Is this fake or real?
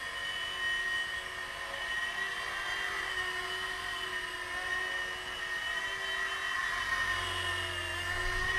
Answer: real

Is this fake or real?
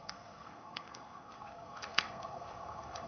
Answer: fake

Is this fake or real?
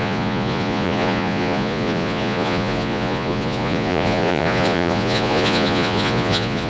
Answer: fake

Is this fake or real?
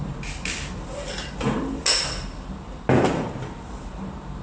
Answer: real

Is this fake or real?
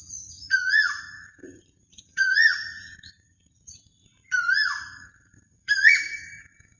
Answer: fake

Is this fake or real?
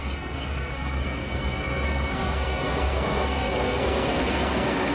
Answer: fake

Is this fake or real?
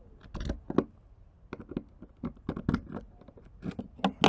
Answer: real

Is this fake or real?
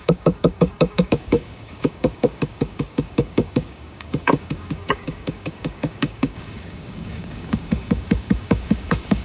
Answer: fake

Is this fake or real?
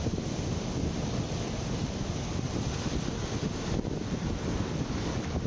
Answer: real